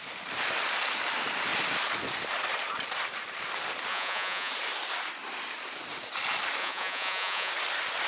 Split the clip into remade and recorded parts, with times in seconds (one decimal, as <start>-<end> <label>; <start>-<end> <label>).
0.0-3.9 recorded; 3.9-4.5 remade; 4.5-6.6 recorded; 6.6-7.5 remade; 7.5-8.1 recorded